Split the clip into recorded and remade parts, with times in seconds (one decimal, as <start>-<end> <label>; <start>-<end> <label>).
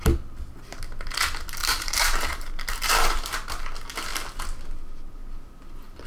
0.0-1.6 recorded; 1.6-3.3 remade; 3.3-6.1 recorded